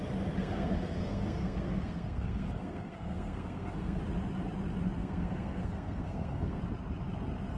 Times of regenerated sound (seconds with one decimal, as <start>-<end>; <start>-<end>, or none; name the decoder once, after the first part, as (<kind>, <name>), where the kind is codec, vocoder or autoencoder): 0.4-4.0 (codec, SNAC); 5.0-6.6